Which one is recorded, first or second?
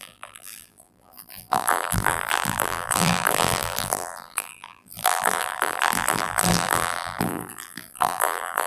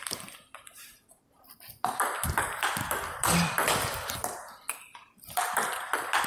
second